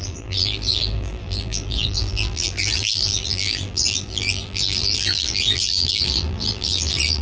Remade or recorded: remade